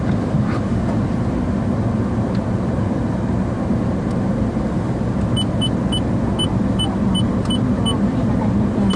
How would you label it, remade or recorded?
recorded